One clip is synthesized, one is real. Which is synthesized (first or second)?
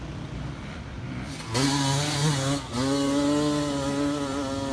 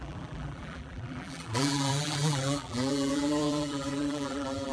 second